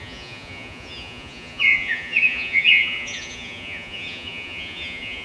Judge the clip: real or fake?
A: fake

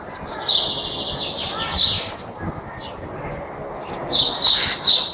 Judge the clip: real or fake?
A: real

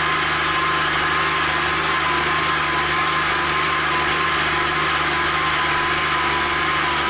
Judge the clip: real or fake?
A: real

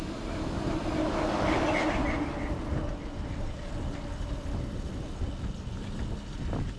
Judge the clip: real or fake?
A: real